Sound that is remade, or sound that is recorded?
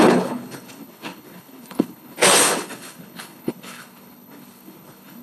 remade